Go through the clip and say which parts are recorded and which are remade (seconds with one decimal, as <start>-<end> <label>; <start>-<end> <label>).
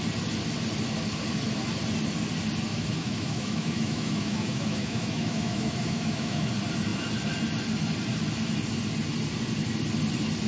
0.0-2.7 recorded; 2.7-6.5 remade; 6.5-10.5 recorded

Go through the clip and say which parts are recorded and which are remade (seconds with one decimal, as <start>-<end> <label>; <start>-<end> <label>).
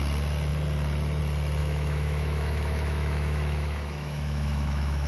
0.0-1.6 recorded; 1.6-5.1 remade